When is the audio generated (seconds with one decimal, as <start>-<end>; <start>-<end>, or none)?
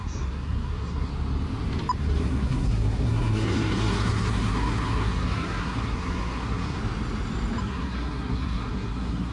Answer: 0.0-1.1; 2.0-6.8; 7.6-9.3